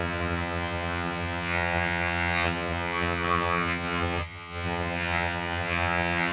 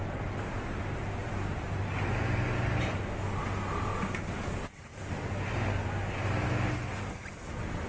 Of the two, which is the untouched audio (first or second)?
second